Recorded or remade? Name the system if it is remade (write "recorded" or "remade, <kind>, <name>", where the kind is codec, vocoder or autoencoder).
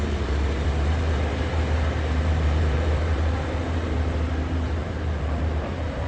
remade, vocoder, BigVGAN v2